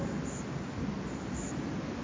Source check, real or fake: real